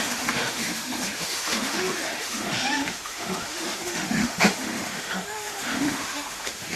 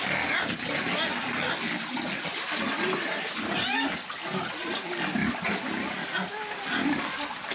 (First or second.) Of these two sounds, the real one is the second